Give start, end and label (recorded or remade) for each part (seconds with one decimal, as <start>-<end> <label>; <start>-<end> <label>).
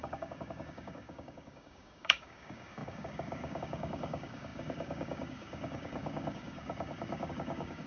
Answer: 0.0-7.9 remade